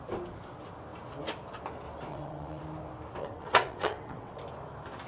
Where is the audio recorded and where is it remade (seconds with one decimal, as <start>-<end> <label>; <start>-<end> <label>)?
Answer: 0.0-2.1 recorded; 2.1-2.6 remade; 2.6-3.2 recorded; 3.2-4.4 remade; 4.4-5.1 recorded